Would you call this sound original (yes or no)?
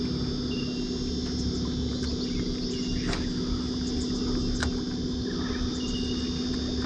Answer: yes